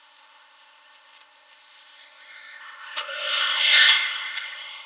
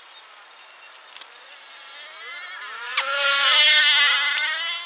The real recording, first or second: second